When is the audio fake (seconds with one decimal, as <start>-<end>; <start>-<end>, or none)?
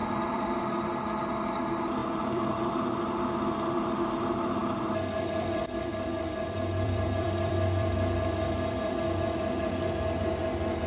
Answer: 0.0-0.6; 2.0-2.7; 4.6-9.7